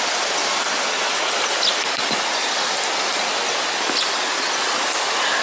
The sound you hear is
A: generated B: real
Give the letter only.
B